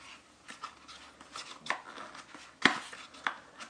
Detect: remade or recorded recorded